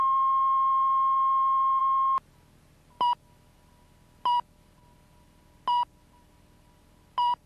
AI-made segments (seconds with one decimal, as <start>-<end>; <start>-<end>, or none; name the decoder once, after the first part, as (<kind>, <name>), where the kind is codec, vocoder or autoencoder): none